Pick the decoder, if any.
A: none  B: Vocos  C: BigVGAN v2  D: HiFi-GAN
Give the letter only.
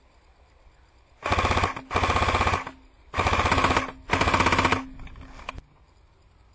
A